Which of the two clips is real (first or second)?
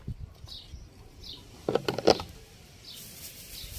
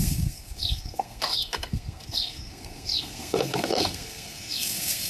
first